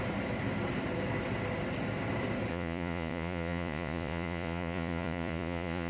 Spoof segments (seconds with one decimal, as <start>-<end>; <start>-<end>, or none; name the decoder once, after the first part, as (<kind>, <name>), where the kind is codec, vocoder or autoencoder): 2.5-5.9 (vocoder, Vocos)